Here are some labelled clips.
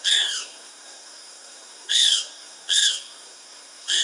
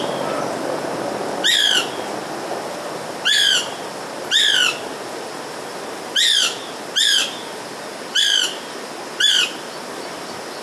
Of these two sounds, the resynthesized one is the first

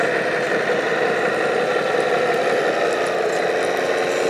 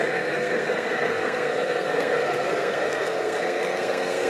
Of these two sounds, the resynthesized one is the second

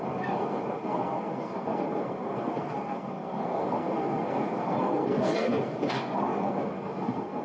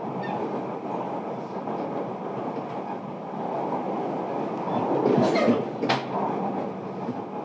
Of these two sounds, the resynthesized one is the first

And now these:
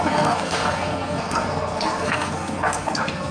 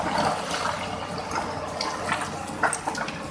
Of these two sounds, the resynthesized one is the first